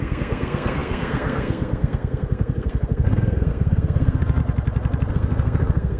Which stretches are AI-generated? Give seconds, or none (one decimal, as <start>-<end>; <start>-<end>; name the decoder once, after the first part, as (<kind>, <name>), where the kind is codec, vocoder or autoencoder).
0.0-4.4 (codec, SNAC); 5.1-6.0